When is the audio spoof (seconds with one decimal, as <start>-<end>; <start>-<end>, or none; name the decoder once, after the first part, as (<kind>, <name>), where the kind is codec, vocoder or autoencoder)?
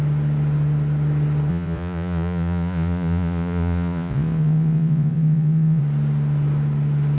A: 1.5-5.8 (vocoder, Vocos)